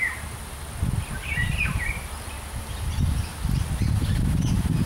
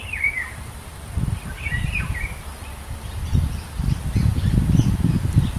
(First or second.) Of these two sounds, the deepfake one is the second